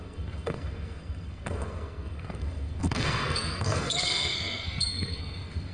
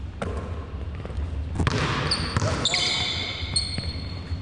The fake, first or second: first